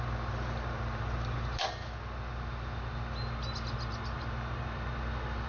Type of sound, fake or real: real